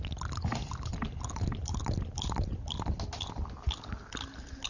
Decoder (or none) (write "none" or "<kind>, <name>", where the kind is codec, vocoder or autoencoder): none